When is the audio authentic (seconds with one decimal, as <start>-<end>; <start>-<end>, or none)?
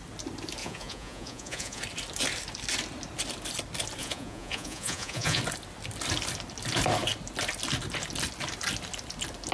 0.0-0.6; 1.8-4.0; 5.4-9.5